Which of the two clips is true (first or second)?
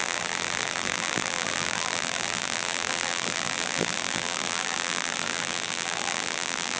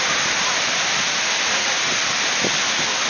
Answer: second